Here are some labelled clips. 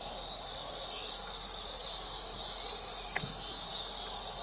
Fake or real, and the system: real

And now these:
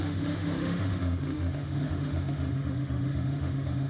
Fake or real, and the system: fake, autoencoder, DAC-VAE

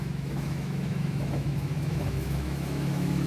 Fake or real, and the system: fake, autoencoder, DAC-VAE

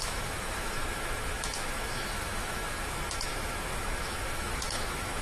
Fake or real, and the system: fake, autoencoder, DAC-VAE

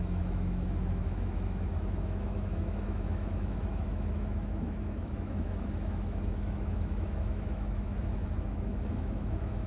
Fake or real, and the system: fake, autoencoder, DAC-VAE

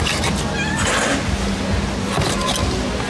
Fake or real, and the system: real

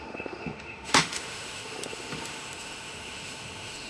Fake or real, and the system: fake, autoencoder, DAC-VAE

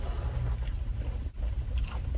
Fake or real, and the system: real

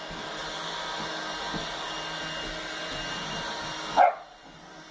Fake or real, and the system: real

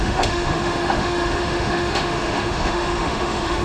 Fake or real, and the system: fake, autoencoder, DAC-VAE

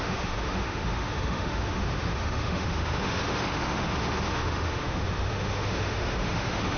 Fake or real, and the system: fake, autoencoder, DAC-VAE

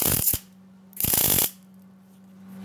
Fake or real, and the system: real